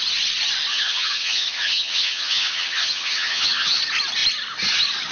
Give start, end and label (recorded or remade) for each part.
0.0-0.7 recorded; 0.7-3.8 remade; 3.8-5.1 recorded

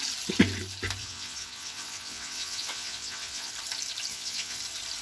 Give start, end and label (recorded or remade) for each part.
0.0-1.0 recorded; 1.0-3.5 remade; 3.5-4.1 recorded; 4.1-4.6 remade; 4.6-5.0 recorded

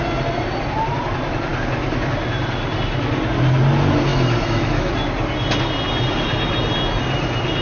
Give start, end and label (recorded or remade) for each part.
0.0-4.1 recorded; 4.1-4.9 remade; 4.9-7.6 recorded

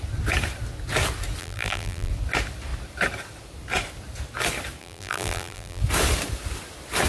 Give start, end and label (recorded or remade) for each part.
0.0-1.4 recorded; 1.4-2.1 remade; 2.1-4.8 recorded; 4.8-5.8 remade; 5.8-7.1 recorded

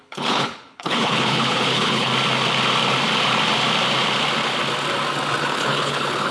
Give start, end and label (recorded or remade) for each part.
0.0-2.1 remade; 2.1-5.4 recorded; 5.4-6.3 remade

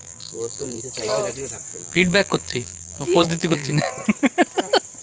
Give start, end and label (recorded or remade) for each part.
0.0-0.8 remade; 0.8-1.7 recorded; 1.7-3.9 remade; 3.9-5.0 recorded

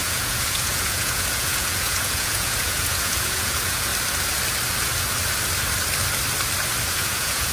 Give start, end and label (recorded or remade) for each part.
0.0-3.9 remade; 3.9-6.9 recorded; 6.9-7.5 remade